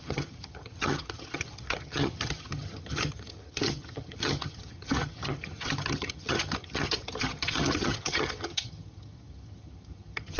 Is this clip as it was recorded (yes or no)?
no